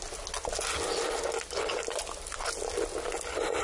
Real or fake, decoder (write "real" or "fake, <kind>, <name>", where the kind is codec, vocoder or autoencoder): real